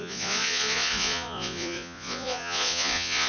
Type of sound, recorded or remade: remade